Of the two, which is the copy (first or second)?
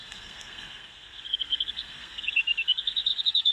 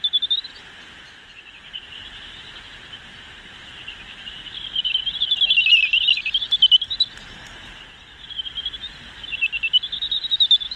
first